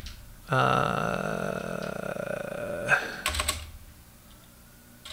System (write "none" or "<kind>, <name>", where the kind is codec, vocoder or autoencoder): none